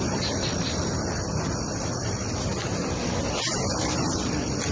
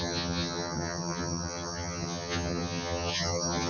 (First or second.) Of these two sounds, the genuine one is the first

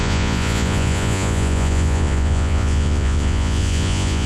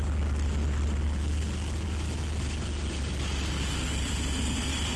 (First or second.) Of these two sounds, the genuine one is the second